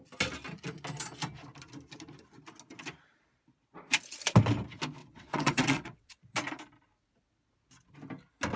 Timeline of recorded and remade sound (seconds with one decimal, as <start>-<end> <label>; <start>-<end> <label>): 0.0-5.0 recorded; 5.0-6.2 remade; 6.2-8.6 recorded